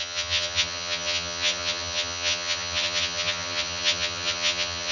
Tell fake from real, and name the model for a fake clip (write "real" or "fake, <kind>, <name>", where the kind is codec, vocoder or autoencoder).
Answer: fake, vocoder, HiFi-GAN